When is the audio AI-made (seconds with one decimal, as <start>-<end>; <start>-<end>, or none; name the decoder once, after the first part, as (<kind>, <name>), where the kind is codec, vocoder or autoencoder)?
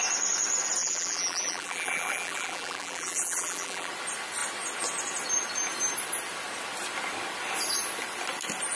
0.8-3.9 (vocoder, BigVGAN v2)